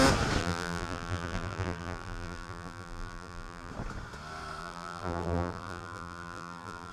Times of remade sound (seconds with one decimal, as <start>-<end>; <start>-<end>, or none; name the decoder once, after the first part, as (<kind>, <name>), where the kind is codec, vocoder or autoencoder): 0.4-3.7 (vocoder, BigVGAN v2); 4.6-6.9